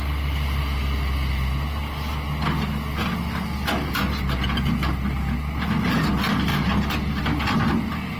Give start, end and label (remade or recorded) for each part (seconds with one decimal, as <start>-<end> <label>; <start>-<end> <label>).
0.0-8.2 recorded